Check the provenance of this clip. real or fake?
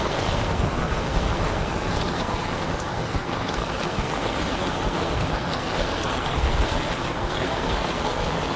fake